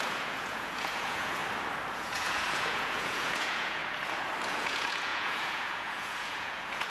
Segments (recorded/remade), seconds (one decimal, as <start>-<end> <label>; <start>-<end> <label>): 0.0-1.4 remade; 1.4-1.9 recorded; 1.9-3.8 remade; 3.8-4.5 recorded; 4.5-6.9 remade